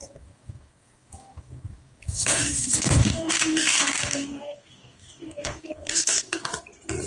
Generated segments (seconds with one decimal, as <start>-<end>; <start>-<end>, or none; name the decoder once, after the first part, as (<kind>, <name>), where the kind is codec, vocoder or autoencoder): 0.0-6.5 (codec, DAC)